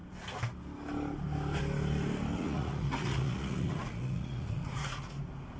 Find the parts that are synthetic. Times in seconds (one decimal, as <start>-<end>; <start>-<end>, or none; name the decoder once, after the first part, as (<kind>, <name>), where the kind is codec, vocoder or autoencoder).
2.3-5.1 (vocoder, Vocos)